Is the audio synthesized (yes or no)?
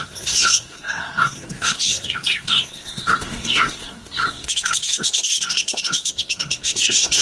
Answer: yes